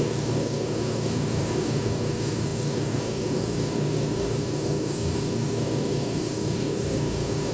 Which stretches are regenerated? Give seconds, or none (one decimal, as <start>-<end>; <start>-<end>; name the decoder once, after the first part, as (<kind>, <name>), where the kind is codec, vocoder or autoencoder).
0.0-7.5 (codec, DAC)